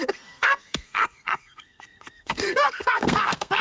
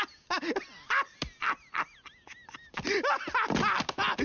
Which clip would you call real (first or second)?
second